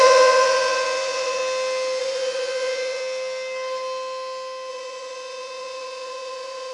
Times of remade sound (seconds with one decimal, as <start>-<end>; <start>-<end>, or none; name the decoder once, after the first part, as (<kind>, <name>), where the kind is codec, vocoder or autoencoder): 0.0-1.4 (vocoder, Vocos); 2.0-3.0; 4.7-6.7